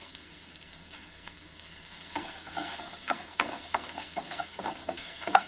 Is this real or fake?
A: fake